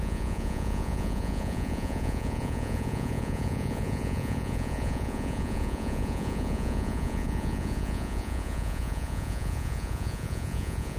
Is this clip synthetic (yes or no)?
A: yes